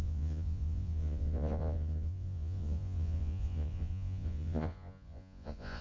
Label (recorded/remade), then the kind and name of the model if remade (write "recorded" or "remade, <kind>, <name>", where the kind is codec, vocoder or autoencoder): remade, vocoder, Vocos